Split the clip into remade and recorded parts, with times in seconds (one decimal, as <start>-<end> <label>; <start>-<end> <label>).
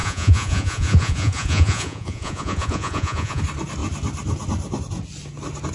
0.0-3.4 remade; 3.4-5.7 recorded